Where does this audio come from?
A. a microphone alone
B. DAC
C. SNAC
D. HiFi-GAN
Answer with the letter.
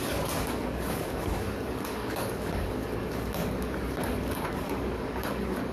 B